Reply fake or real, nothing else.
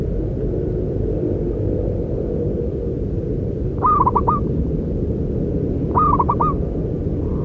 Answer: real